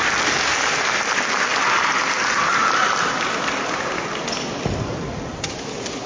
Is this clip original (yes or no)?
yes